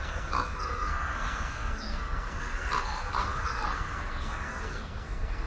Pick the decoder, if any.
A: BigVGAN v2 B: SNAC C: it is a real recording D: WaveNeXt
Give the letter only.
B